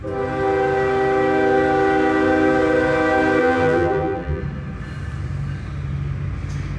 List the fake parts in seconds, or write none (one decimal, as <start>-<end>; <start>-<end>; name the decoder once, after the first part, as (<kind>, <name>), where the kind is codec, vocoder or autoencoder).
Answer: 3.4-4.4 (vocoder, BigVGAN v2)